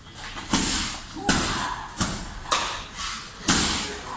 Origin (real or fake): real